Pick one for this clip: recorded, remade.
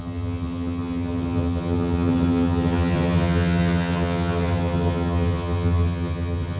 remade